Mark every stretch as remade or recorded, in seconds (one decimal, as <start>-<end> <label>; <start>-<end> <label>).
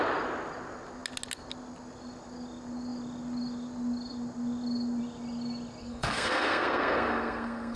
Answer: 0.0-5.8 recorded; 5.8-7.8 remade